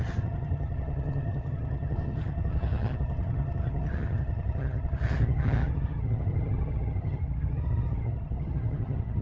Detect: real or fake fake